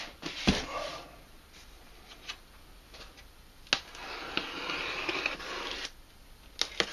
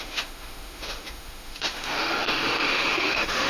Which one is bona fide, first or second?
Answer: first